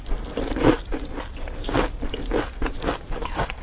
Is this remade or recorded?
recorded